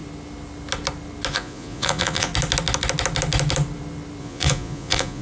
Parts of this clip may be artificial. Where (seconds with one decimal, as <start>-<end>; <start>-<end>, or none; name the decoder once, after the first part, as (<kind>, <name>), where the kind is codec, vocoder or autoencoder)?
1.3-2.3 (vocoder, Vocos); 4.2-5.2